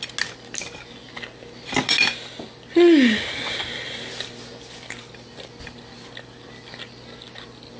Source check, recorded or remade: recorded